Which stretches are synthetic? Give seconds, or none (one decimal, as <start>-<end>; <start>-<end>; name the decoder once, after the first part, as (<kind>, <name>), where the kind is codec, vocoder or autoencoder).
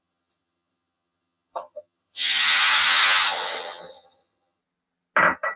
0.0-4.6 (vocoder, HiFi-GAN)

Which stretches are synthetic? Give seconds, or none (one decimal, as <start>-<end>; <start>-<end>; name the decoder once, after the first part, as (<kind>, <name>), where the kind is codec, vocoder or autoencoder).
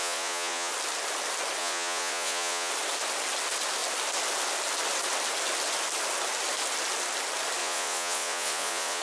0.0-0.7 (vocoder, Vocos); 1.6-2.7; 7.6-9.0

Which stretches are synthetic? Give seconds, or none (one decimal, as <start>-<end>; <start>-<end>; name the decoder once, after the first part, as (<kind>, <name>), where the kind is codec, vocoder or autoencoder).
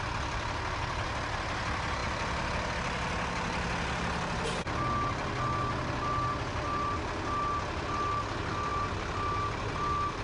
none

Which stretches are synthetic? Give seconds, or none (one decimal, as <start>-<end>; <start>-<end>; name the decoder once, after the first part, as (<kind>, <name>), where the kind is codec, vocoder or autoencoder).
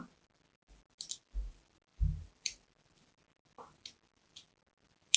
none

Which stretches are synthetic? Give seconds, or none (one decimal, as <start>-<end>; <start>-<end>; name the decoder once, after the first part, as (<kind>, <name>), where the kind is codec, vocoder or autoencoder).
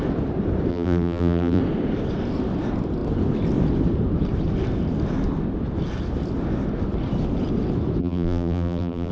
0.7-1.6 (vocoder, BigVGAN v2); 8.0-9.1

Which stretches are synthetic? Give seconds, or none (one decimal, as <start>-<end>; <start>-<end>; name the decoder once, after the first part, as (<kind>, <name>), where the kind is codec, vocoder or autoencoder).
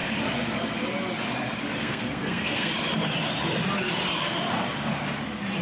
1.8-2.7 (codec, SNAC)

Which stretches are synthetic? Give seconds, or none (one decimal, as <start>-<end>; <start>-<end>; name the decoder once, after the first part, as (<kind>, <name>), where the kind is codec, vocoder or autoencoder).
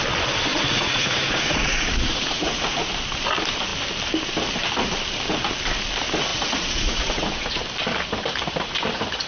0.5-2.9 (vocoder, Vocos); 6.3-7.6